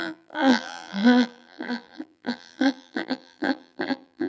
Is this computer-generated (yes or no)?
yes